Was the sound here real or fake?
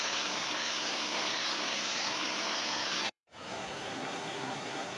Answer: fake